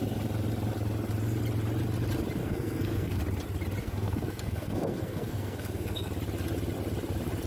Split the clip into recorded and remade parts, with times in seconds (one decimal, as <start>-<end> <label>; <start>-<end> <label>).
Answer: 0.0-2.4 recorded; 2.4-3.2 remade; 3.2-3.8 recorded; 3.8-6.1 remade; 6.1-7.5 recorded